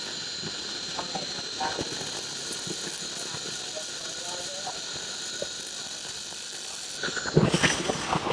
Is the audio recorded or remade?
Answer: recorded